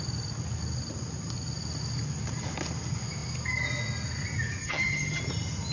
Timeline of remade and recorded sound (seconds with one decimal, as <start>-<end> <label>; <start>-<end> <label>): 0.0-4.6 recorded; 4.6-5.2 remade; 5.2-5.7 recorded